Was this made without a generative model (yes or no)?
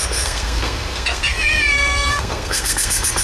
no